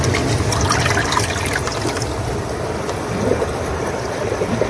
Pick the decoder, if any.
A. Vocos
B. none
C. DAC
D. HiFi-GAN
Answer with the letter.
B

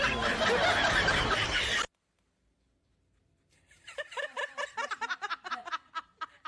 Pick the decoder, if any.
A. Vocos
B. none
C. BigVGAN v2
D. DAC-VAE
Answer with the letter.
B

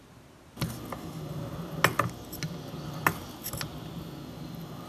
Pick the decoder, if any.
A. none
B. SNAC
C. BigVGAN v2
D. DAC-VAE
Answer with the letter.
A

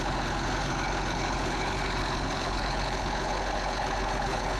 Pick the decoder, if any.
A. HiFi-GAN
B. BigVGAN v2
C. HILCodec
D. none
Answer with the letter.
C